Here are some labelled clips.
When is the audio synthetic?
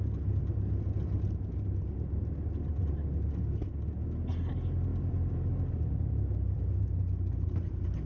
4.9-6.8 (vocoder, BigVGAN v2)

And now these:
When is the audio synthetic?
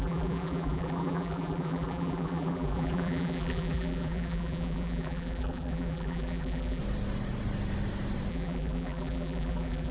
0.0-6.8 (vocoder, BigVGAN v2); 8.3-9.9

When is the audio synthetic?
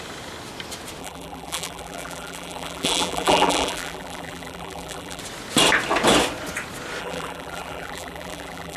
1.0-5.2 (vocoder, BigVGAN v2); 7.0-8.8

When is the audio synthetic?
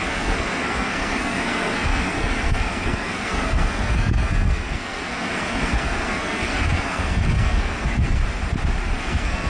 0.0-8.2 (codec, SNAC); 9.0-9.5